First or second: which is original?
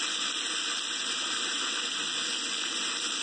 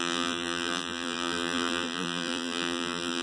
first